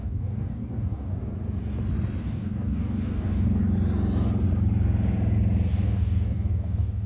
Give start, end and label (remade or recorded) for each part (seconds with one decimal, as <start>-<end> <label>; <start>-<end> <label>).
0.0-1.2 remade; 1.2-2.2 recorded; 2.2-3.6 remade; 3.6-5.7 recorded; 5.7-7.1 remade